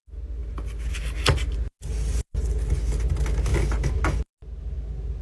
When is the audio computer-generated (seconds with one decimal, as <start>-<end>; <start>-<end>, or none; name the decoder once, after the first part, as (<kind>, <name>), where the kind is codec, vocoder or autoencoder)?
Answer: none